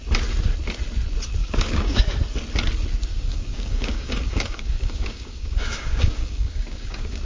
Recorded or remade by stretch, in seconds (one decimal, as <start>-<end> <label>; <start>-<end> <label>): 0.0-1.4 recorded; 1.4-2.0 remade; 2.0-3.1 recorded; 3.1-7.2 remade